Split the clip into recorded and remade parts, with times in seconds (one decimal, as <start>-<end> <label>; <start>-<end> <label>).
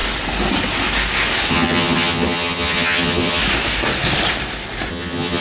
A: 0.0-1.5 recorded; 1.5-3.4 remade; 3.4-4.9 recorded; 4.9-5.4 remade